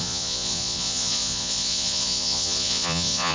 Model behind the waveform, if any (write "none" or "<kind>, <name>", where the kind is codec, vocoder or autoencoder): vocoder, Vocos